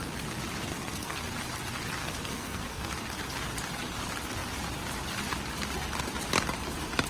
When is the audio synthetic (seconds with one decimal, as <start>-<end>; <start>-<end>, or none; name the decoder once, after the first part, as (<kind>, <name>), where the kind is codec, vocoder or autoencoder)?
0.7-1.2 (codec, SNAC); 2.0-2.9